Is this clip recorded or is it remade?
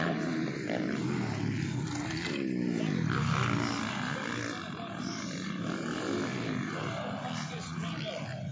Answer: recorded